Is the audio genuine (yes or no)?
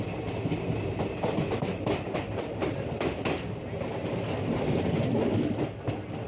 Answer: yes